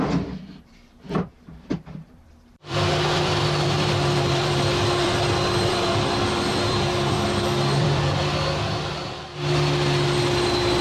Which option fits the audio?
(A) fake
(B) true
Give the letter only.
A